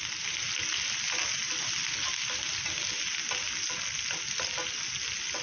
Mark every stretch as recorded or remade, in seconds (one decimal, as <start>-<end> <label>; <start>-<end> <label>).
0.0-5.4 recorded